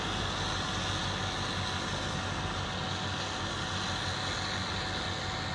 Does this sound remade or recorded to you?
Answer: recorded